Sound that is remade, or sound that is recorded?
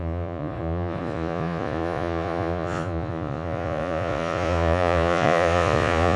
remade